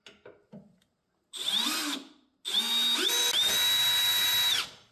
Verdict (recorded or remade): recorded